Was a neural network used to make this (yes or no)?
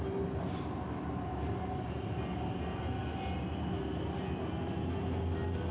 no